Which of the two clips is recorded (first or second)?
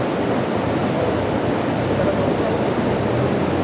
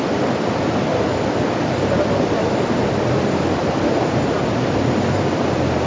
first